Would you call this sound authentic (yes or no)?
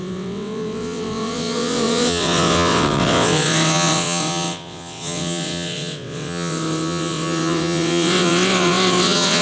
no